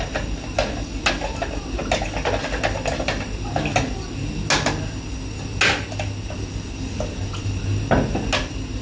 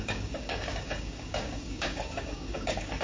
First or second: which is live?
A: first